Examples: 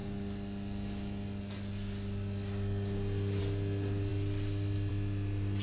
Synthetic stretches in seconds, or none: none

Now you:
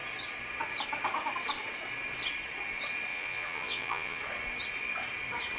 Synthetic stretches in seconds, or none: 3.1-4.2

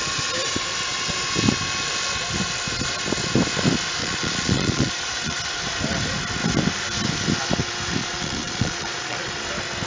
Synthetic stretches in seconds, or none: 4.0-5.4; 8.0-9.3

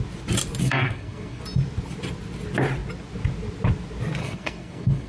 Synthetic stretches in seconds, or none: 0.6-1.4; 4.2-5.1

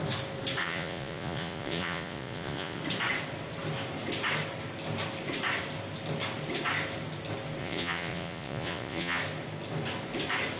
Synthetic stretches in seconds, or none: 0.6-2.8; 7.6-9.2